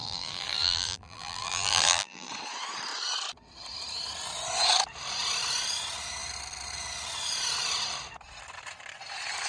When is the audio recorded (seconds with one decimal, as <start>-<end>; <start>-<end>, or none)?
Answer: 2.3-9.5